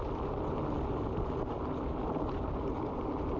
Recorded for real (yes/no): yes